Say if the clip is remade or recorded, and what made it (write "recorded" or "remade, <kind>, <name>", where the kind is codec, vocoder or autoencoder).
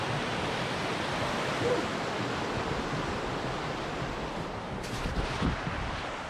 recorded